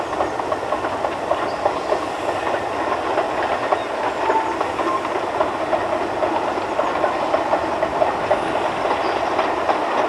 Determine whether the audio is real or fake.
real